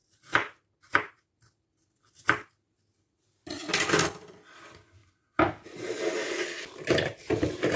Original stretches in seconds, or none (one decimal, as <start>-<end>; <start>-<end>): 1.3-7.8